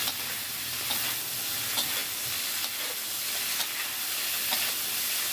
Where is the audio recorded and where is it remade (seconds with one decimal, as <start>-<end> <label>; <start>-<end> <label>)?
0.0-5.3 recorded